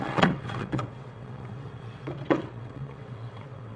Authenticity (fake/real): fake